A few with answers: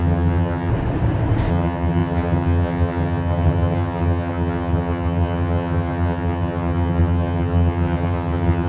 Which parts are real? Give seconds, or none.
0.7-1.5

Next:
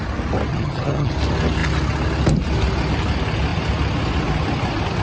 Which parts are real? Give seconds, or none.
0.0-0.5; 1.1-5.0

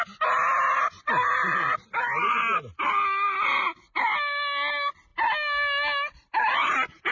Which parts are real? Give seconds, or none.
0.0-7.1